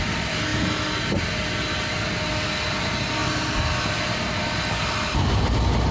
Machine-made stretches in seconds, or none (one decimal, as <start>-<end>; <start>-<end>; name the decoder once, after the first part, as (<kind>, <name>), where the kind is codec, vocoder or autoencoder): none